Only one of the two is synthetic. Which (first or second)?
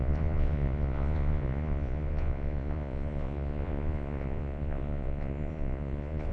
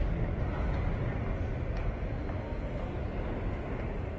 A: first